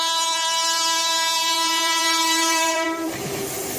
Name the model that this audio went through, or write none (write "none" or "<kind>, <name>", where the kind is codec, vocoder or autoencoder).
vocoder, BigVGAN v2